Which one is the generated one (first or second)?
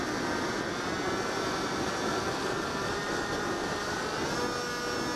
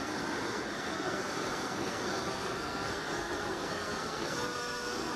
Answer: second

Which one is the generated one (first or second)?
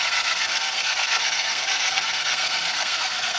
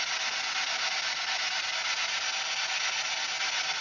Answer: first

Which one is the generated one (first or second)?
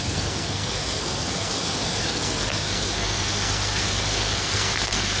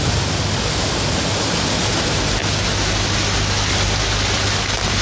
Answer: first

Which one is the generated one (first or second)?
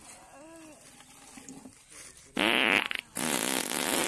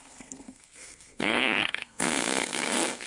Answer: second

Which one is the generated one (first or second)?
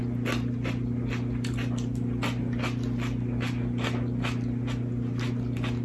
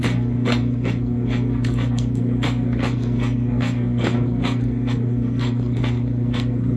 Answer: second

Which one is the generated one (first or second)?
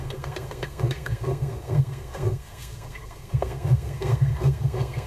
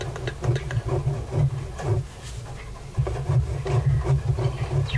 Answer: first